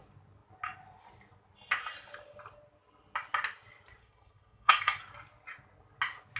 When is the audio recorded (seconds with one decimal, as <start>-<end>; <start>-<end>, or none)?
0.0-4.0; 5.0-6.4